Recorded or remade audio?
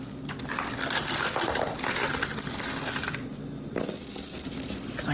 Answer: recorded